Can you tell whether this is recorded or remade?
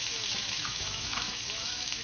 remade